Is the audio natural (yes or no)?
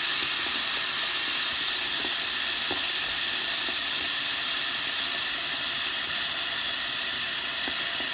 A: yes